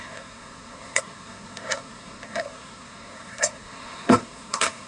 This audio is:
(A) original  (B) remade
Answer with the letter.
B